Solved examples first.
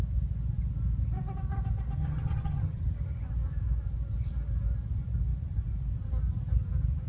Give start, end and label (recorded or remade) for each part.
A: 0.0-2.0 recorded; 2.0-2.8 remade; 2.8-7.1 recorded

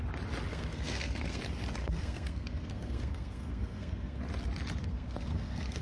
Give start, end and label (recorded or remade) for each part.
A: 0.0-0.5 recorded; 0.5-1.4 remade; 1.4-1.8 recorded; 1.8-4.2 remade; 4.2-4.8 recorded; 4.8-5.8 remade

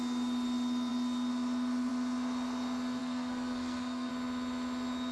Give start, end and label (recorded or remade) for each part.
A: 0.0-3.0 recorded; 3.0-4.1 remade; 4.1-5.1 recorded

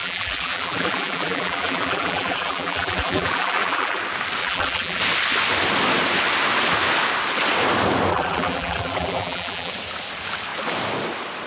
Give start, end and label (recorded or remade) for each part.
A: 0.0-4.0 remade; 4.0-4.4 recorded; 4.4-5.0 remade; 5.0-8.1 recorded; 8.1-9.7 remade; 9.7-11.5 recorded

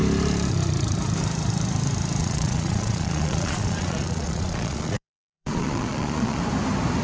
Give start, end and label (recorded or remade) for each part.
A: 0.0-2.2 recorded; 2.2-6.4 remade; 6.4-7.0 recorded